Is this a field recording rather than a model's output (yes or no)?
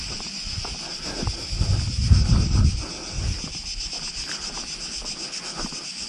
yes